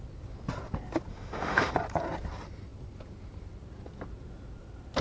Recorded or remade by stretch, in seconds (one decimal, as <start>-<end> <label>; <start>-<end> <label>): 0.0-1.1 recorded; 1.1-1.7 remade; 1.7-5.0 recorded